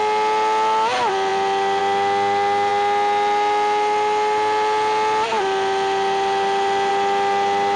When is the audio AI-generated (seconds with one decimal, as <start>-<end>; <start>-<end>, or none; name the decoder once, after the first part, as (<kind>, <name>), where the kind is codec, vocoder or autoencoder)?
none